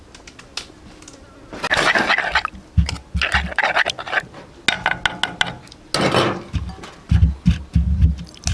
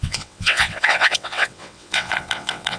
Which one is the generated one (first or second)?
second